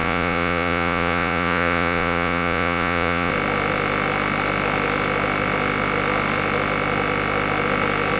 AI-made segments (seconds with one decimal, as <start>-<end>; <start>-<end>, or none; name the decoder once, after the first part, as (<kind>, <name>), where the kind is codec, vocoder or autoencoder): 0.0-3.3 (vocoder, Vocos)